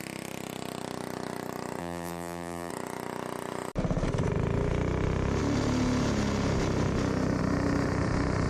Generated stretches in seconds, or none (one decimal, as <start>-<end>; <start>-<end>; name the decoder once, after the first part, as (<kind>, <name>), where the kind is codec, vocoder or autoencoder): 1.8-2.7 (vocoder, BigVGAN v2)